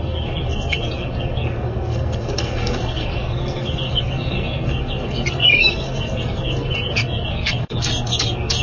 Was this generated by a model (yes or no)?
yes